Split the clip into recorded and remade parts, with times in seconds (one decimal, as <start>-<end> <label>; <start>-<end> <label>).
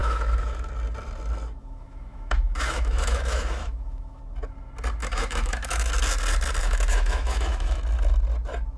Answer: 0.0-0.7 remade; 0.7-1.6 recorded; 1.6-4.2 remade; 4.2-5.0 recorded; 5.0-5.9 remade; 5.9-6.6 recorded; 6.6-7.8 remade; 7.8-8.8 recorded